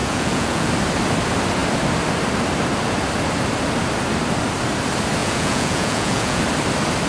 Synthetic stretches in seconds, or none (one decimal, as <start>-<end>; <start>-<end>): 0.0-0.7; 5.2-6.4